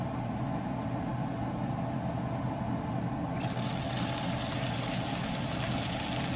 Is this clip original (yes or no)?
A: yes